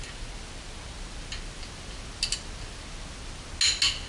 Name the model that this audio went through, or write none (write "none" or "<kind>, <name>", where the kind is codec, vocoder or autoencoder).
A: none